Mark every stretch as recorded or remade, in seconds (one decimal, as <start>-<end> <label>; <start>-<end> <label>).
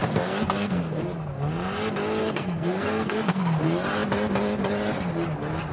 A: 0.0-1.0 remade; 1.0-2.2 recorded; 2.2-3.4 remade; 3.4-5.7 recorded